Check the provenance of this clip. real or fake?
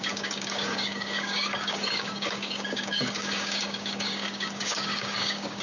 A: fake